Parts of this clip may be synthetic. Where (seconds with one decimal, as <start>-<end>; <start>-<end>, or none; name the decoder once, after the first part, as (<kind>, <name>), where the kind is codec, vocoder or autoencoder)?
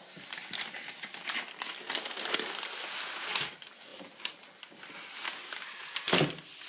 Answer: none